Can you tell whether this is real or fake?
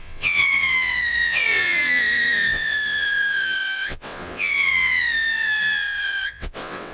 fake